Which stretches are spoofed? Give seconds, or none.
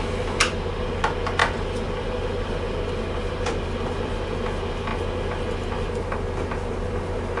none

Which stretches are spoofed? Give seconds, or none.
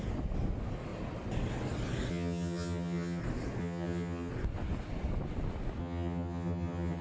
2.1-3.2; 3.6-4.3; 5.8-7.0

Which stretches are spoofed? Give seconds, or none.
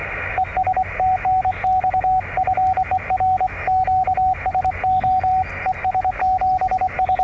none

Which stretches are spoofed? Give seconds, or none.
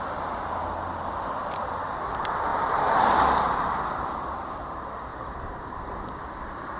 2.5-3.0; 5.1-5.8